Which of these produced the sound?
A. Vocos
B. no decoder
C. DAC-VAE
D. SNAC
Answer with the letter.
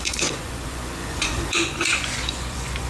A